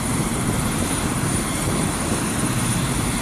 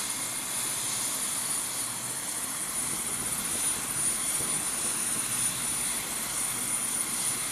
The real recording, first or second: second